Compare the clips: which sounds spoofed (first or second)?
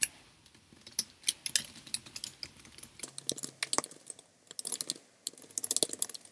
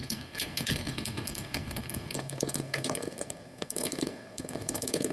second